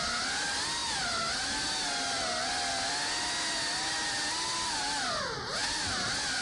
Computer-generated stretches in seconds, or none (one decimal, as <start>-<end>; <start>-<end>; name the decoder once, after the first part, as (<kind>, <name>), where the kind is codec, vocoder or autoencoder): none